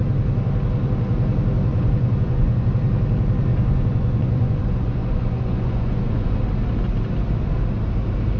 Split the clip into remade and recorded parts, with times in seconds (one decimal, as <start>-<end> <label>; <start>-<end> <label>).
0.0-1.7 recorded; 1.7-2.7 remade; 2.7-3.5 recorded; 3.5-6.4 remade; 6.4-8.4 recorded